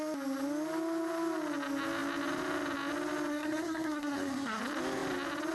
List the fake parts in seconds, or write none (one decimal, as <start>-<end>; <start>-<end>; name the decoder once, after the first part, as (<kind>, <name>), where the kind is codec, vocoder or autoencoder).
3.3-4.6 (codec, SNAC)